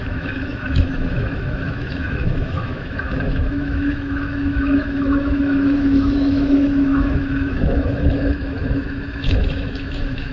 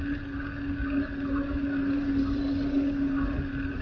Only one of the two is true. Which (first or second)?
second